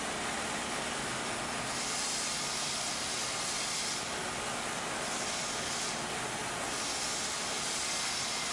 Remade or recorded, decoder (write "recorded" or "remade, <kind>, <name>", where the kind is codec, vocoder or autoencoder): recorded